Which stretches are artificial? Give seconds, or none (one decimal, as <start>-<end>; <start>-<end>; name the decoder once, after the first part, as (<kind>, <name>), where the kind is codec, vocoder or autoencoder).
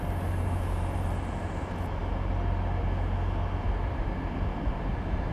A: none